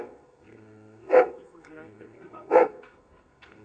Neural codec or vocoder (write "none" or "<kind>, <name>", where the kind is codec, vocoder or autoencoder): codec, SNAC